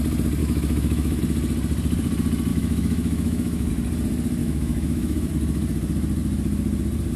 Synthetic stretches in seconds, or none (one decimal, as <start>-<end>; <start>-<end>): 0.4-1.2; 2.5-3.7; 4.4-5.3